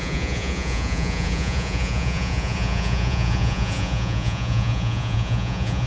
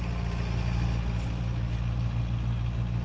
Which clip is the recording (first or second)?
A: second